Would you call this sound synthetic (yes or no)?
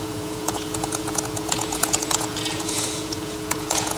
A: yes